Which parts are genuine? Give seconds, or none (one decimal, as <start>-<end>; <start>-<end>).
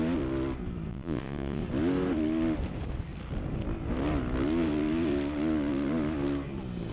0.0-0.9; 1.6-6.9